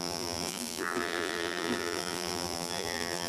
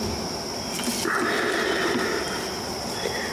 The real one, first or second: second